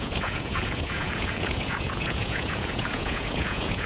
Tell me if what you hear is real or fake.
fake